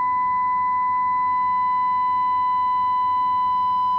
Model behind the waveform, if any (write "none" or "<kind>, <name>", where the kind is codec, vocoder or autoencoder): none